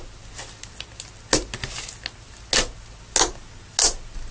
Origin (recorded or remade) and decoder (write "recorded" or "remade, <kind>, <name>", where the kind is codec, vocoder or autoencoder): recorded